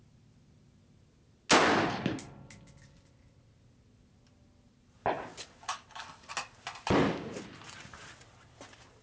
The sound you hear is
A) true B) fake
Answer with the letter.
A